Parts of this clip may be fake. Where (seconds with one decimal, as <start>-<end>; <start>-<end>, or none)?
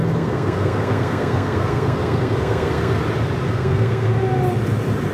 0.0-3.0; 3.5-4.1